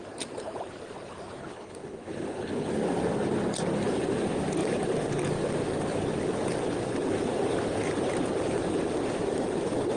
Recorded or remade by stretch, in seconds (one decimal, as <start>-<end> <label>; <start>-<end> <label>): 0.0-1.4 recorded; 1.4-2.7 remade; 2.7-10.0 recorded